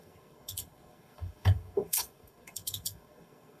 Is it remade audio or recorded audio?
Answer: remade